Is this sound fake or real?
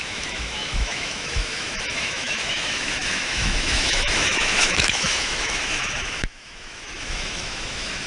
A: fake